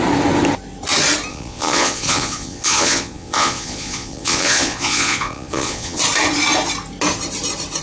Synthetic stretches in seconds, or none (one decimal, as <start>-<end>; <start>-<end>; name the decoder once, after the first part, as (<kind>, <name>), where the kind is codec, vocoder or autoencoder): 1.3-6.0 (vocoder, Vocos)

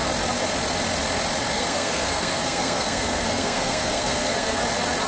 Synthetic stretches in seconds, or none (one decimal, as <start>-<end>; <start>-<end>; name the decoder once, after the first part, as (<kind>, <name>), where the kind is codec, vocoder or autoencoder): 1.5-4.6 (codec, SNAC)

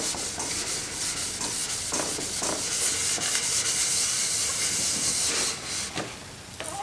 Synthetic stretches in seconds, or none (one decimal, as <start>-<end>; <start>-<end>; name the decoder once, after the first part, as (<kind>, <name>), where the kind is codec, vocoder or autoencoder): 3.8-5.4 (vocoder, BigVGAN v2)

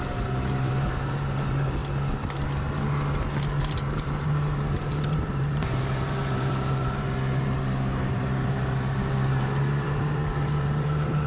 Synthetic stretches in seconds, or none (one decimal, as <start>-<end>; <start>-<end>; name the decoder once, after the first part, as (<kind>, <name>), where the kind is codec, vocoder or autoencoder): 0.0-1.8 (vocoder, BigVGAN v2); 3.6-11.3

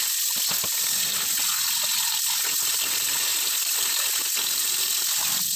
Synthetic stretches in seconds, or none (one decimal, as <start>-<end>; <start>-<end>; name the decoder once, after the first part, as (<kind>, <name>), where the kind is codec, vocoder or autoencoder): none

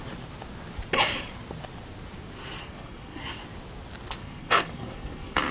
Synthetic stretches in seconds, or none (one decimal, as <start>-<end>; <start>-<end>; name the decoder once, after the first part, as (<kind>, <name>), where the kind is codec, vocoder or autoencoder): 2.6-3.2 (codec, SNAC); 4.2-5.5